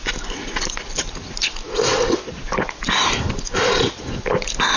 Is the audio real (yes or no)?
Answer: yes